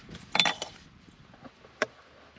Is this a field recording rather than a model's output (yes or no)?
no